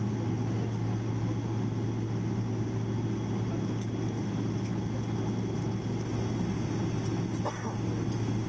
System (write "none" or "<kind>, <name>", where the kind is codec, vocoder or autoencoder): none